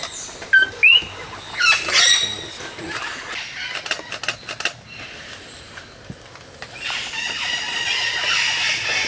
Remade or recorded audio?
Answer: recorded